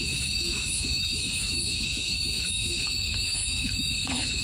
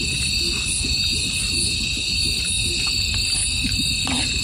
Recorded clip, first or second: second